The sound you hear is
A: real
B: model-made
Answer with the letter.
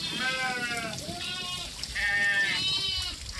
A